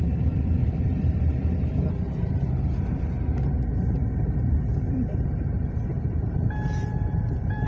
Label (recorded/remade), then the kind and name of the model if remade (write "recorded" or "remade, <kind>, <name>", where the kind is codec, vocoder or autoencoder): remade, vocoder, BigVGAN v2